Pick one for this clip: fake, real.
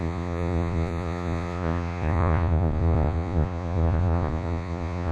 fake